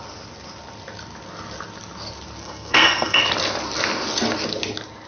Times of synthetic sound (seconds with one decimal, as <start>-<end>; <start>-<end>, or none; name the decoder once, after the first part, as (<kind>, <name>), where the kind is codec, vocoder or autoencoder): 2.4-3.2 (codec, SNAC)

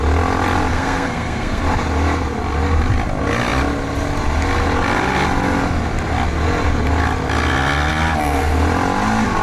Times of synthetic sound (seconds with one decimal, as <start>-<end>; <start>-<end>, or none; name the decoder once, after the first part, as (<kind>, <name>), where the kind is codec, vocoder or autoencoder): 0.7-1.6 (codec, SNAC)

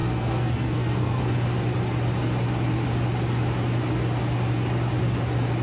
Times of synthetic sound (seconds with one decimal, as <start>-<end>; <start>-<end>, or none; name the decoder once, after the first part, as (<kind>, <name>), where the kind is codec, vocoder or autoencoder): 0.0-1.2 (codec, SNAC)

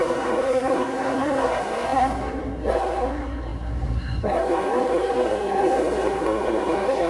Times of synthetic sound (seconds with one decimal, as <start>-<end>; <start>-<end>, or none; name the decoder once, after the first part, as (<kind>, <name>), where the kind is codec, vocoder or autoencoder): 0.0-7.1 (codec, SNAC)